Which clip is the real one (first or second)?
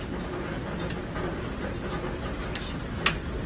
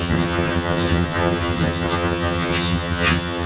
first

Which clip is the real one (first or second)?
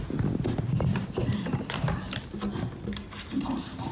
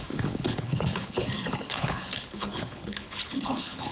first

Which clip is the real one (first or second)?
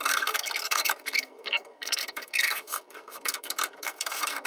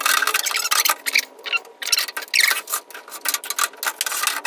second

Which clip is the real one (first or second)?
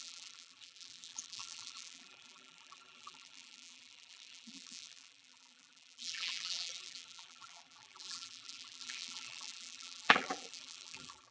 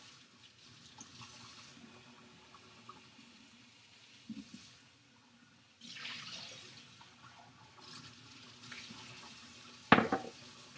second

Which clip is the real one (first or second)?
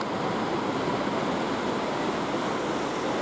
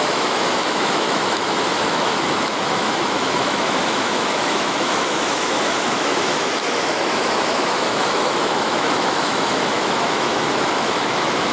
first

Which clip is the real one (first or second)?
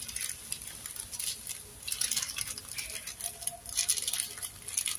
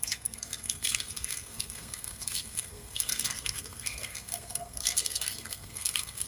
first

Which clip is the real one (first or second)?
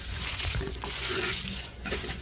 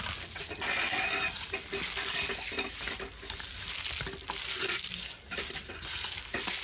second